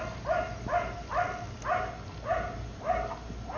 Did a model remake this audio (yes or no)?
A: no